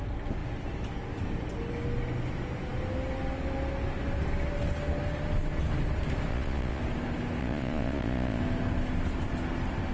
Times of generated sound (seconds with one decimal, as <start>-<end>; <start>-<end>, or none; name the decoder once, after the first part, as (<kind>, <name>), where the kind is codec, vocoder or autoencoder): 6.3-6.8 (vocoder, Vocos); 7.4-8.4